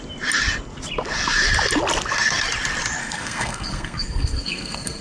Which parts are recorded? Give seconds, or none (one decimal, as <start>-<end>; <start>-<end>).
0.0-3.0